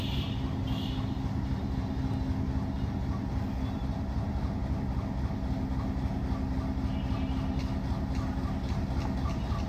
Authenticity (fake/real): real